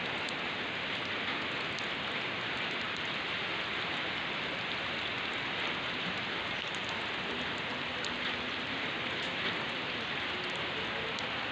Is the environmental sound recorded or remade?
recorded